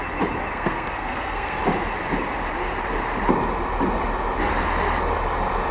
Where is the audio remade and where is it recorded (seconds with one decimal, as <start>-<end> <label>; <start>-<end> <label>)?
0.0-0.5 recorded; 0.5-1.6 remade; 1.6-5.7 recorded